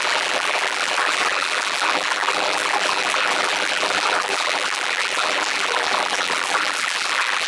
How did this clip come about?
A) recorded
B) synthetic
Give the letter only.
B